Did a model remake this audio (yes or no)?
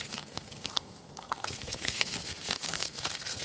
yes